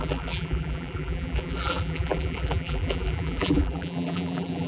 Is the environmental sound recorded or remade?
remade